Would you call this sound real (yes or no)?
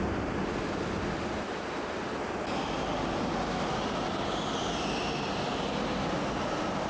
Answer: yes